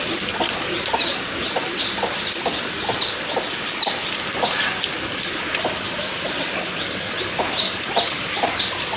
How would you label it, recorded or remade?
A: recorded